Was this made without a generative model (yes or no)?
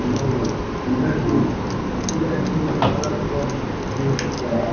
yes